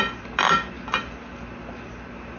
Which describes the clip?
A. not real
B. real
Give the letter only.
B